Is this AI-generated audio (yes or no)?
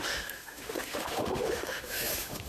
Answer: yes